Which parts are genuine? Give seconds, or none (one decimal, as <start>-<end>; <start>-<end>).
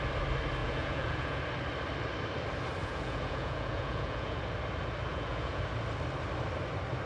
0.0-0.6; 1.4-2.8; 4.4-5.1; 5.6-7.1